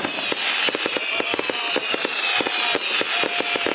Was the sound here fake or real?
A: real